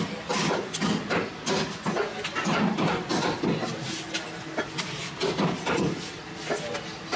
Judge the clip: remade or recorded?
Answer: recorded